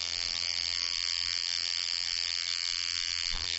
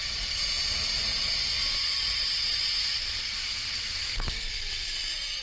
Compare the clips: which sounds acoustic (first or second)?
second